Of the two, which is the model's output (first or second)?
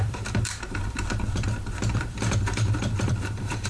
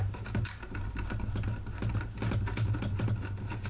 first